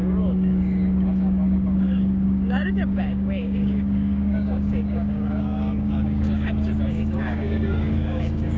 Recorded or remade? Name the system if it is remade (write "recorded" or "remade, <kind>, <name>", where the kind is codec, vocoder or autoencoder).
remade, codec, DAC